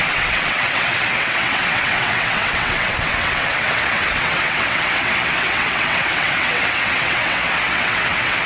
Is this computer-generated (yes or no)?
yes